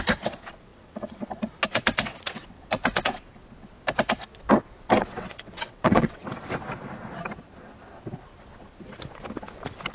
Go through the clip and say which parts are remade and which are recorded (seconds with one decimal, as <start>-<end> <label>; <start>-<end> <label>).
0.0-0.7 recorded; 0.7-1.4 remade; 1.4-2.1 recorded; 2.1-3.0 remade; 3.0-5.0 recorded; 5.0-6.2 remade; 6.2-9.9 recorded